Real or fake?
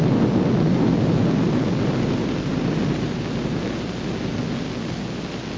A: real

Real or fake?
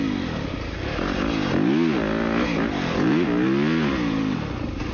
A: real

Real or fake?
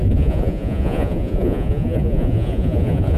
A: fake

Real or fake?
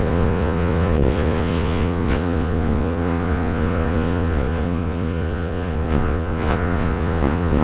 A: fake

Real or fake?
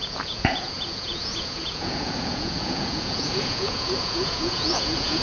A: fake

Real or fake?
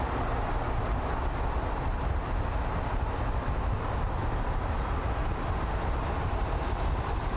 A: real